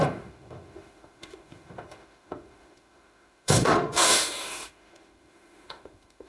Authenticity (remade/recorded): remade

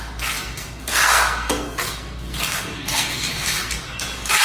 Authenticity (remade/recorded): remade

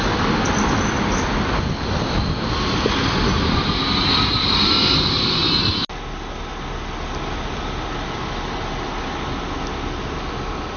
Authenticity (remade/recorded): recorded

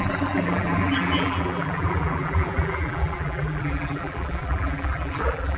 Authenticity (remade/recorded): remade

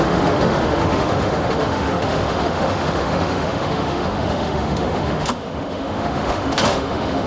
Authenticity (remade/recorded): remade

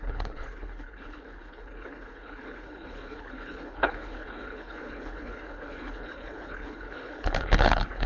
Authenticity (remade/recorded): remade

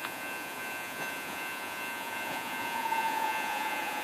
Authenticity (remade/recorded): remade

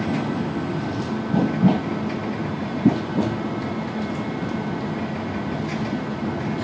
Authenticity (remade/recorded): recorded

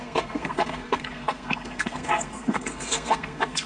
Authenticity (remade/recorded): remade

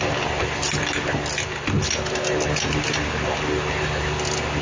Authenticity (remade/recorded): recorded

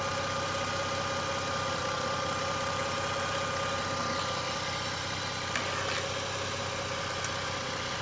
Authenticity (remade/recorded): recorded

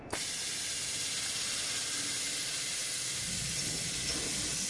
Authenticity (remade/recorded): recorded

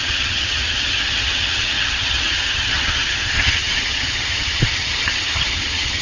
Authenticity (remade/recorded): remade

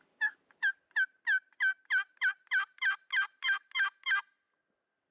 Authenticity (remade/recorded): recorded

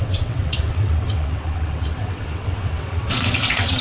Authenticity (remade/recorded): remade